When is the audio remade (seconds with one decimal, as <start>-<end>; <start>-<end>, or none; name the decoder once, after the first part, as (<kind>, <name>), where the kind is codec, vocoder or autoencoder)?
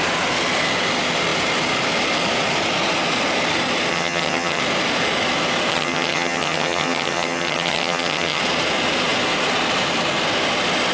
3.9-4.6 (vocoder, HiFi-GAN); 5.7-8.4